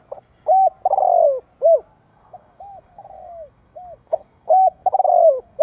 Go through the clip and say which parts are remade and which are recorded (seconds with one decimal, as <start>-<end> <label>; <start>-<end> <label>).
0.0-2.1 recorded; 2.1-5.6 remade